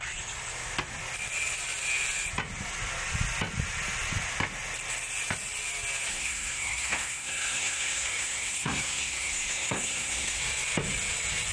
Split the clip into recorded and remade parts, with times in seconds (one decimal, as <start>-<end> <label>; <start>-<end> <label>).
0.0-6.1 recorded; 6.1-10.4 remade; 10.4-11.5 recorded